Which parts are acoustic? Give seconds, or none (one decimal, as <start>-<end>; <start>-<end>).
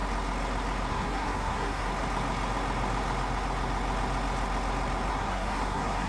0.0-0.9; 1.9-5.1